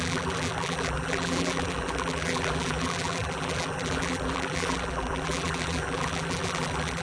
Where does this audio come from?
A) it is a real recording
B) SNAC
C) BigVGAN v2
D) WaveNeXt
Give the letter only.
C